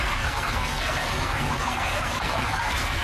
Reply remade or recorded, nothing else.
remade